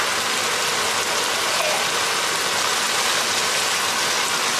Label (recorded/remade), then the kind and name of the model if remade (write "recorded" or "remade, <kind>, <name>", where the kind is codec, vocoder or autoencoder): recorded